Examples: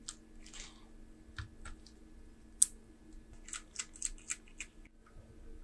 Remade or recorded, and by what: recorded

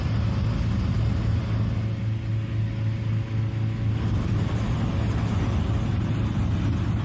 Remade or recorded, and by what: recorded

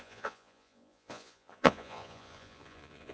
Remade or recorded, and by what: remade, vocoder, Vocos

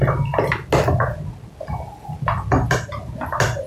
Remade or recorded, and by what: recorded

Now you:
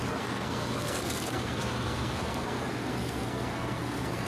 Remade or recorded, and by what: remade, codec, SNAC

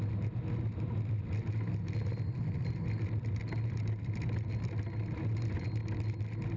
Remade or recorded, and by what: recorded